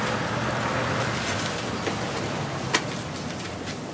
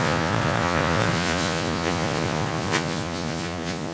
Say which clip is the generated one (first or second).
second